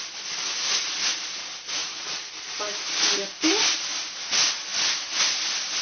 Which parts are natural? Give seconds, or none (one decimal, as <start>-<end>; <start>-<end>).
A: 0.0-1.8; 2.3-5.8

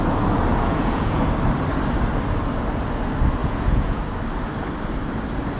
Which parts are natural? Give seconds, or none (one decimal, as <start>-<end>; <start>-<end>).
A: 0.0-0.5; 1.3-3.4; 4.0-5.6

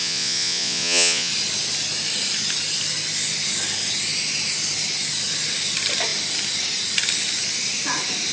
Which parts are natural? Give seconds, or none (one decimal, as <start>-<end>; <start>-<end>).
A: 1.3-8.3

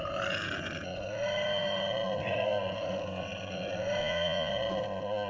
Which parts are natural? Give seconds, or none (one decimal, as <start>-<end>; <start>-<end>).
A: 0.0-4.0; 4.5-5.3